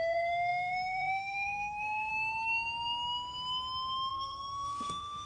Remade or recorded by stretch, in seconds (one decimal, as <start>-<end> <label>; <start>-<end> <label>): 0.0-2.1 remade; 2.1-4.1 recorded; 4.1-5.3 remade